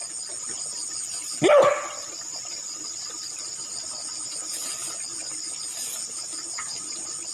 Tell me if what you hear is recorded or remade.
recorded